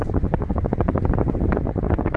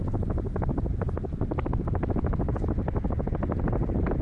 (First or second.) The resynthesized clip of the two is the first